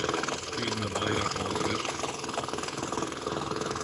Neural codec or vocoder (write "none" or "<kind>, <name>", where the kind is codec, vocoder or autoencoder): codec, HILCodec